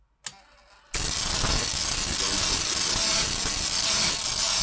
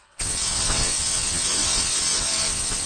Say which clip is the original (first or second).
first